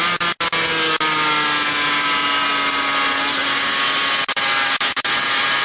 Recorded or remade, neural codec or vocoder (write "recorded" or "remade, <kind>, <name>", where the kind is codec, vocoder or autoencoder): recorded